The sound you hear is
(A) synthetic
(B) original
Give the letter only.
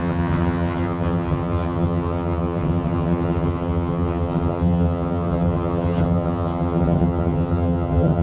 A